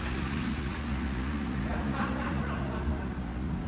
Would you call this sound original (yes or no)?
no